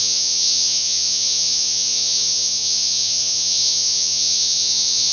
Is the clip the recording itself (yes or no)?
no